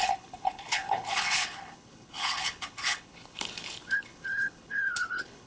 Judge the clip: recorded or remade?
remade